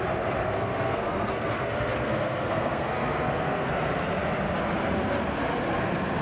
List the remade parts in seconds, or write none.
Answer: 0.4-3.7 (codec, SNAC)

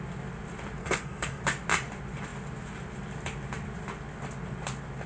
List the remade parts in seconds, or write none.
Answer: 0.8-1.4 (codec, SNAC)

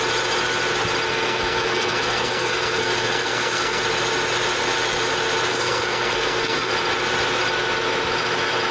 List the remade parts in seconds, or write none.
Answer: 1.1-3.8 (codec, SNAC); 5.5-6.7